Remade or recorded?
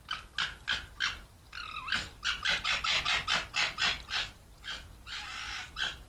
recorded